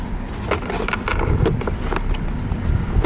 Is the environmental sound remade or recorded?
recorded